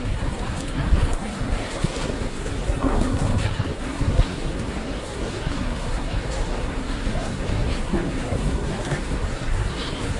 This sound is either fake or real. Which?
fake